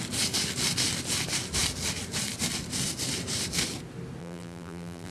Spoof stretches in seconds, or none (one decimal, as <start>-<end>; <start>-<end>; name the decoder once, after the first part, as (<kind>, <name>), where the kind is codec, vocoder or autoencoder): 4.2-5.1 (vocoder, BigVGAN v2)